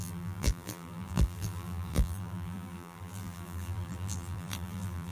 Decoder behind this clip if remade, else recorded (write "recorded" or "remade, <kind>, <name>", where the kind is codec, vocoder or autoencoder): remade, vocoder, BigVGAN v2